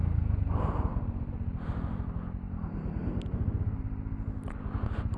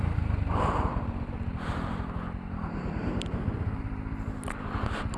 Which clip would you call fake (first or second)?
second